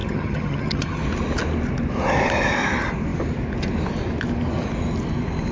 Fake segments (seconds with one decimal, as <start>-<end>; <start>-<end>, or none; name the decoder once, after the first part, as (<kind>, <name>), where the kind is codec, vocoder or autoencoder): 0.0-1.0 (vocoder, HiFi-GAN)